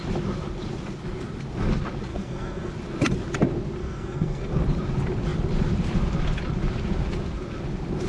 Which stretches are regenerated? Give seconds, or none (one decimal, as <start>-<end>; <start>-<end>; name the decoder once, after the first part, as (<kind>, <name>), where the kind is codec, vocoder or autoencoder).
2.1-2.7 (codec, SNAC); 3.8-4.5